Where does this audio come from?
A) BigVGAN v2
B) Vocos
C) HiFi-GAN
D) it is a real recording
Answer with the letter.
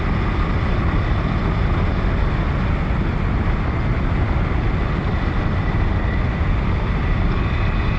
D